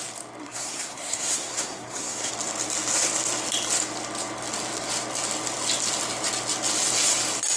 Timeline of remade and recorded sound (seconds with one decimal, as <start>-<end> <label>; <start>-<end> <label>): 0.0-0.4 recorded; 0.4-2.3 remade; 2.3-7.6 recorded